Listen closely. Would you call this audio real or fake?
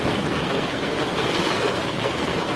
fake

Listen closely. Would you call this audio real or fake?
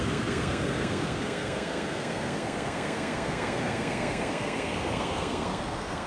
fake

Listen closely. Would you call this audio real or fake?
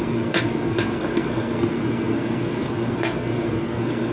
fake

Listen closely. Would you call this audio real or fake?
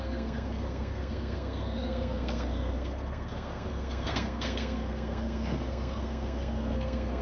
fake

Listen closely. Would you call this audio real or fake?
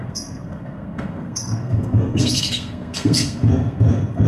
fake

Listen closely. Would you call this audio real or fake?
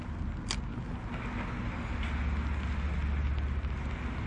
real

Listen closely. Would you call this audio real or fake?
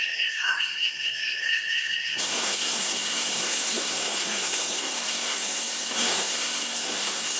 fake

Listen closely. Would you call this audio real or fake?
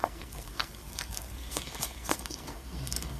fake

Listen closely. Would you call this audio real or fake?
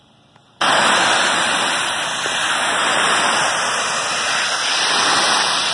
real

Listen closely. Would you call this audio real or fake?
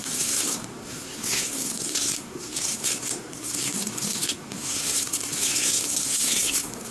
fake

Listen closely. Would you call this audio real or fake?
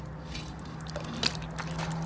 real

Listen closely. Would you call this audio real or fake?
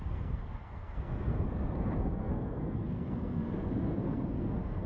fake